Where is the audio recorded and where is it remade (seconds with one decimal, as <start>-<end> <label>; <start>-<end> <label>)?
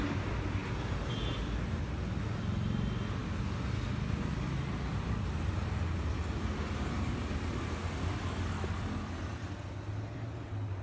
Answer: 0.0-10.8 recorded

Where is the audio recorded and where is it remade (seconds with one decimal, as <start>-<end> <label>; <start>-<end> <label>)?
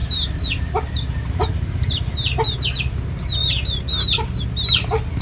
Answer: 0.0-2.3 remade; 2.3-3.4 recorded; 3.4-4.4 remade; 4.4-5.2 recorded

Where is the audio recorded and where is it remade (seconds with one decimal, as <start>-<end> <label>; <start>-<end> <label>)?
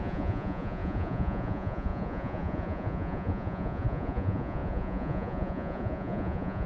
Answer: 0.0-6.7 remade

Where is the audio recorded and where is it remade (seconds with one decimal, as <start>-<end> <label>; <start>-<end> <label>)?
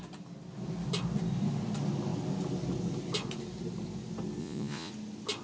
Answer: 0.0-4.4 recorded; 4.4-4.9 remade; 4.9-5.4 recorded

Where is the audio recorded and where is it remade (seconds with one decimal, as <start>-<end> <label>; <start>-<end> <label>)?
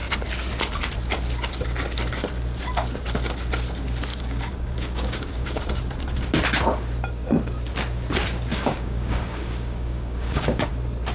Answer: 0.0-4.1 recorded; 4.1-5.6 remade; 5.6-8.5 recorded; 8.5-10.7 remade; 10.7-11.1 recorded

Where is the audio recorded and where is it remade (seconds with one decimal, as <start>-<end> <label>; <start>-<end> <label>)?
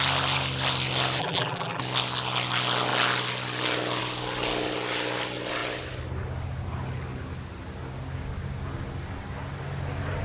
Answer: 0.0-1.2 recorded; 1.2-1.8 remade; 1.8-10.2 recorded